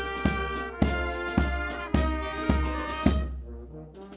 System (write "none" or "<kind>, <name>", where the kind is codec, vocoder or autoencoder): none